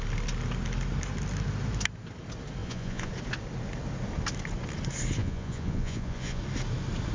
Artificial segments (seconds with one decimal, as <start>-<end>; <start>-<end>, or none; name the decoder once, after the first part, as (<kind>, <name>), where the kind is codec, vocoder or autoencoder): 2.6-3.1 (vocoder, Vocos); 5.2-6.4